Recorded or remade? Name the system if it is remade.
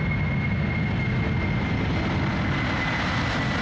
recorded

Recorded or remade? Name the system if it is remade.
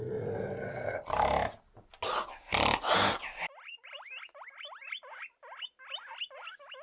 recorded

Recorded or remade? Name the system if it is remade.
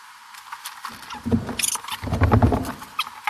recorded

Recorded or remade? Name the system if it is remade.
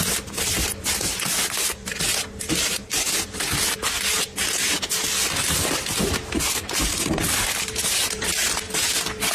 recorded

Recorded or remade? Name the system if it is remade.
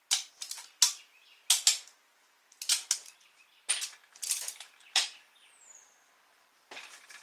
recorded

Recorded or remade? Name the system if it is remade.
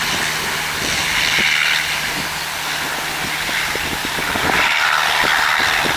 recorded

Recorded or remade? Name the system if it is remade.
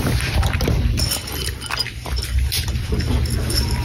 remade, vocoder, BigVGAN v2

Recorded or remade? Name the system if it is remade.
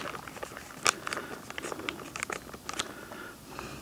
recorded